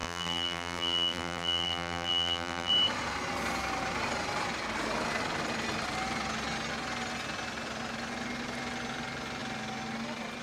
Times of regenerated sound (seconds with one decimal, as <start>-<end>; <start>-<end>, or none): 0.0-2.7